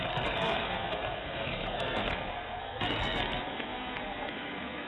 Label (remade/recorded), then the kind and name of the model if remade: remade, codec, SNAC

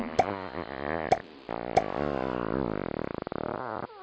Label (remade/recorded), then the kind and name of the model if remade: recorded